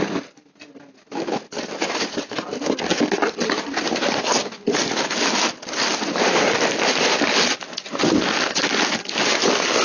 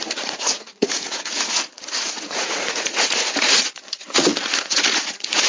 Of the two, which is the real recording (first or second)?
first